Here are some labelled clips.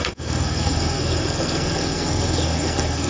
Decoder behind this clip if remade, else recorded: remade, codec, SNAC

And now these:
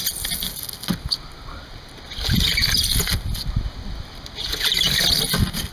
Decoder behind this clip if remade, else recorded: recorded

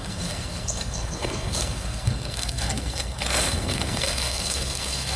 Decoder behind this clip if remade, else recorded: remade, codec, SNAC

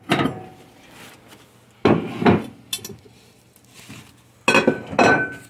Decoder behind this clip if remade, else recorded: recorded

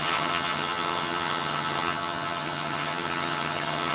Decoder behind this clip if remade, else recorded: remade, vocoder, HiFi-GAN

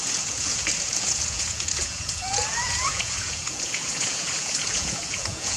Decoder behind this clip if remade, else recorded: remade, vocoder, Vocos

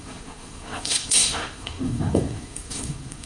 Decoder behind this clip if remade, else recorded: remade, codec, SNAC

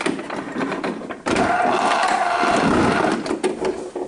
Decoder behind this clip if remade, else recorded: recorded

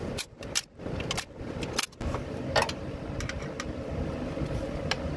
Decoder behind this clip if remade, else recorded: recorded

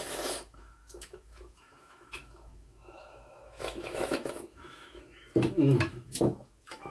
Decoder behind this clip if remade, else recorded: remade, autoencoder, DAC-VAE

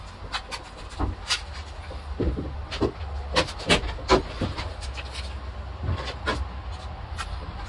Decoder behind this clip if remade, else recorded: recorded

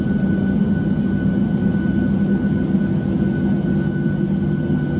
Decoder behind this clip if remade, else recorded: recorded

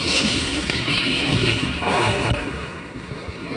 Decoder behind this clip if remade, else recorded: remade, codec, SNAC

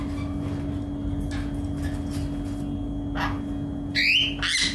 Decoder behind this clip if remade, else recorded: recorded